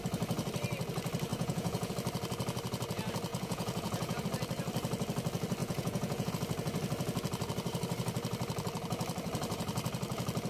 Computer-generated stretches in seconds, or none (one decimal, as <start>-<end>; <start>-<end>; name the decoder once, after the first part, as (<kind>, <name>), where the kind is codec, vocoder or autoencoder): 1.3-1.9 (vocoder, Vocos); 3.3-4.2; 5.6-6.3